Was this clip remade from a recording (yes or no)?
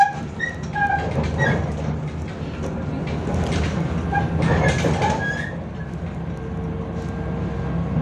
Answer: no